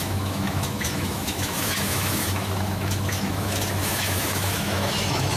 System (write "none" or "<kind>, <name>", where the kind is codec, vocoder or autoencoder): autoencoder, DAC-VAE